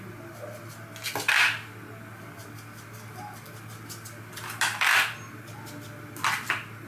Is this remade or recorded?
recorded